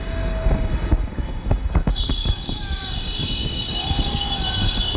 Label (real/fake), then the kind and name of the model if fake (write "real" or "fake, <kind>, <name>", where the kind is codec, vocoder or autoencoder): fake, codec, DAC